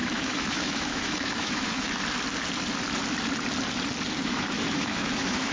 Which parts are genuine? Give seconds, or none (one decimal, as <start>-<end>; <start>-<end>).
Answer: 2.0-4.1